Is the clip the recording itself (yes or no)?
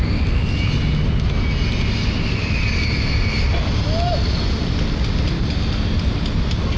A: yes